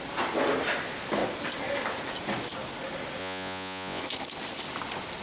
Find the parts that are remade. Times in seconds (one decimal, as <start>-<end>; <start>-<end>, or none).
3.2-4.0